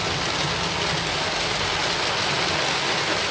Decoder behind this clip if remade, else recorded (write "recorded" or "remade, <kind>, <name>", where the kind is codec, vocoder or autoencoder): recorded